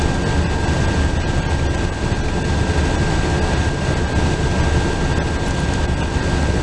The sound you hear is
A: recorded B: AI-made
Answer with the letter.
A